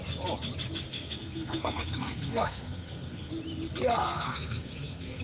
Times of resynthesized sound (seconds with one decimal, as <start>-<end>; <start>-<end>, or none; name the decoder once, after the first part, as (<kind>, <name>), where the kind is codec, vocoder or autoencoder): 0.9-3.3 (codec, SNAC); 3.9-5.2